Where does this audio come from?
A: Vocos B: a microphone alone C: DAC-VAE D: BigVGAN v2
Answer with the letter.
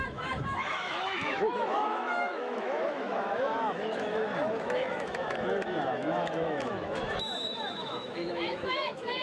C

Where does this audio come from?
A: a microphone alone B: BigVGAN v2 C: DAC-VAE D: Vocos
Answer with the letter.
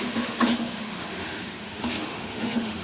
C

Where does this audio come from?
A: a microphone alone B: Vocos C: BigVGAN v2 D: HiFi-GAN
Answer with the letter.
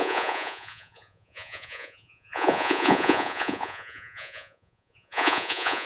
B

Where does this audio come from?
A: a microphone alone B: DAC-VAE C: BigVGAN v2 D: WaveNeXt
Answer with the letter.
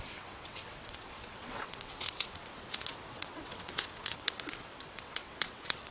D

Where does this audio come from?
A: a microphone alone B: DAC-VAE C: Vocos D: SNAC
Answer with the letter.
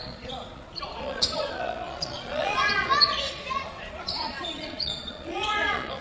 C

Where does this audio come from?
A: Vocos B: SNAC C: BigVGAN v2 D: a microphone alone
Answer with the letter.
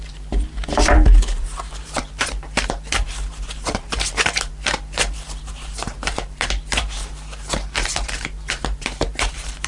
C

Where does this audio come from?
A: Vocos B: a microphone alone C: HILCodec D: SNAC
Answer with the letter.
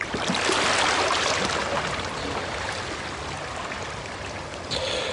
B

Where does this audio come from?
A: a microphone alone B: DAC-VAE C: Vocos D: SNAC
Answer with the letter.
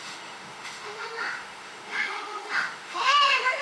B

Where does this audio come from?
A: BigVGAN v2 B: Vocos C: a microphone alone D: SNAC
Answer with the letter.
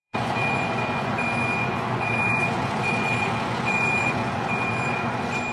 B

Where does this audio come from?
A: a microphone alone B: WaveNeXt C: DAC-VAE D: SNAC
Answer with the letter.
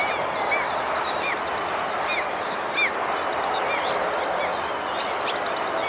A